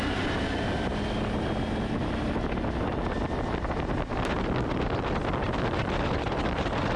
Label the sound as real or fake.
real